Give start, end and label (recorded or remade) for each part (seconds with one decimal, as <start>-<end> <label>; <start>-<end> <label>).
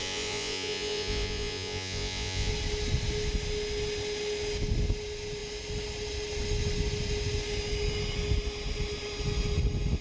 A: 0.0-2.5 remade; 2.5-10.0 recorded